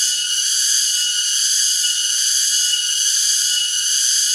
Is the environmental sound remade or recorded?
recorded